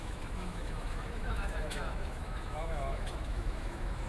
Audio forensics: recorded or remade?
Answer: remade